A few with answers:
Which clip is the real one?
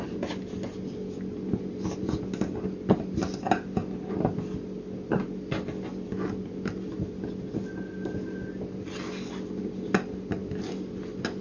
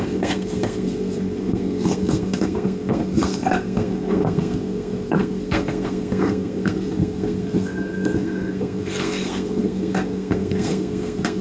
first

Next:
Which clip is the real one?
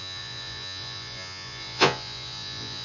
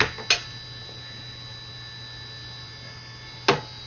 second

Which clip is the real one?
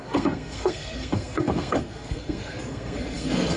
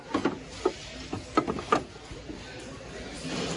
second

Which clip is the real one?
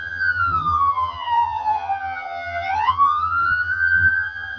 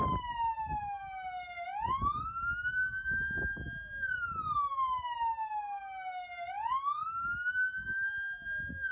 second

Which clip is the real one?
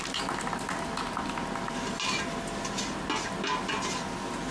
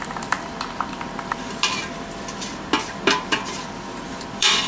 first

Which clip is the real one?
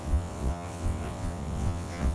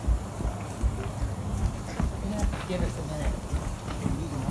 second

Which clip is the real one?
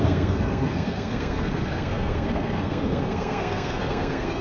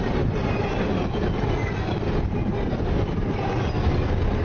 second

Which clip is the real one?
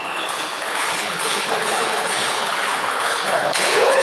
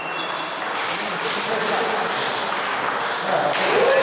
second